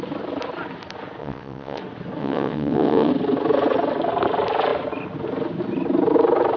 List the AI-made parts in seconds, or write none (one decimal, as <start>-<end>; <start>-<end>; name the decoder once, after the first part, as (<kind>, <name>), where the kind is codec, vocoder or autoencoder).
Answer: 1.2-1.8 (vocoder, WaveNeXt); 2.2-3.1